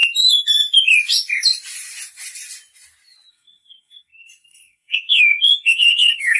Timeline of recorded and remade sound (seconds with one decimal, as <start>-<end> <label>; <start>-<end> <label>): 0.0-3.3 recorded; 3.3-6.4 remade